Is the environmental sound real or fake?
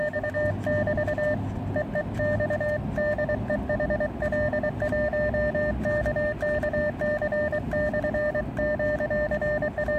real